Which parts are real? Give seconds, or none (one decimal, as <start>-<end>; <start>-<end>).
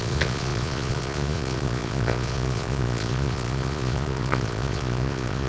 none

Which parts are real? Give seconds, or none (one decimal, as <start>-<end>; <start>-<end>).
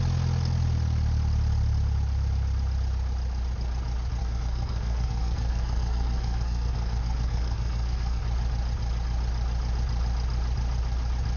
0.0-4.2; 8.2-11.4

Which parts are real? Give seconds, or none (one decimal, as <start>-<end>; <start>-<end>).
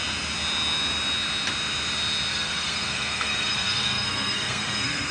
0.0-2.3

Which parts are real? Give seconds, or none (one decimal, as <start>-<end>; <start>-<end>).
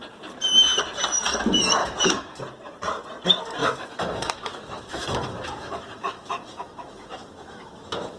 0.0-1.8; 2.4-3.6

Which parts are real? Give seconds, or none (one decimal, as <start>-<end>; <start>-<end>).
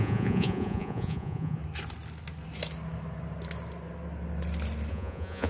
1.6-4.9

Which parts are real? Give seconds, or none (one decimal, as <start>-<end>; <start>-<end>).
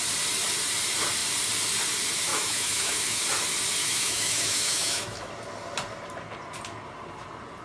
0.0-2.3; 3.2-3.8; 5.3-7.6